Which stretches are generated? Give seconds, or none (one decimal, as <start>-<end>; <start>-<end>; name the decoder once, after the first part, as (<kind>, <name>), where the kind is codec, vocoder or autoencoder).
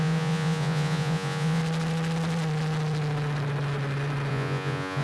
0.0-1.6 (vocoder, Vocos); 4.3-5.0